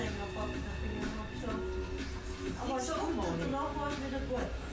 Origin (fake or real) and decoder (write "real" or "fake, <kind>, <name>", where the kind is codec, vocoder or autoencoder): real